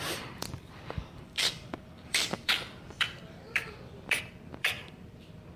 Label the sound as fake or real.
fake